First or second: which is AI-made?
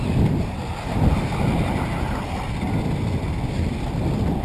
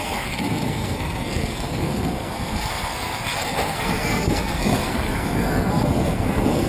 second